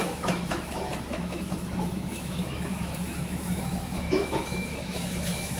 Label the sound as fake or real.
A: fake